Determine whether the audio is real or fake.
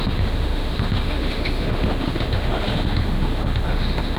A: fake